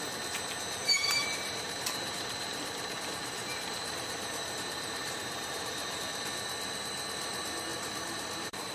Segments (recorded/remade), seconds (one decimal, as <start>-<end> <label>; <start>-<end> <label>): 0.0-0.8 recorded; 0.8-6.0 remade; 6.0-7.7 recorded; 7.7-8.7 remade